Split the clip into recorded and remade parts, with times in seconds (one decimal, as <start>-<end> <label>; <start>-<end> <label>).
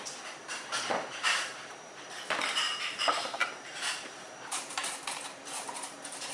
0.0-6.3 remade